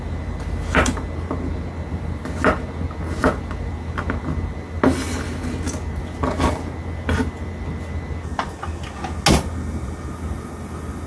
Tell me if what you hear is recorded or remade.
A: recorded